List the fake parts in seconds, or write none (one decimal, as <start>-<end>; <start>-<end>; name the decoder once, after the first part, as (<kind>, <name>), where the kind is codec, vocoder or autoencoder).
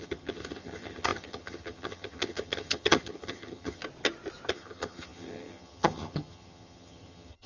0.0-3.8 (vocoder, HiFi-GAN); 4.5-7.5